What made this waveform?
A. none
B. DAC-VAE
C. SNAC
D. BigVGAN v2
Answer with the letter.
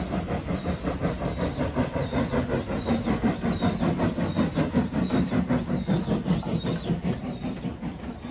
A